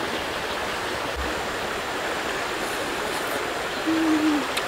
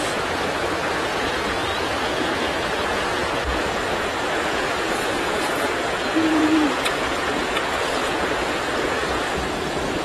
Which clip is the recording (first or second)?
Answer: first